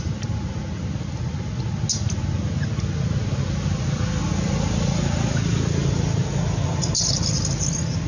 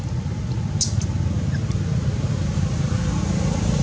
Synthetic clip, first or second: second